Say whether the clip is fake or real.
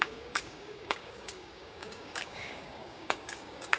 fake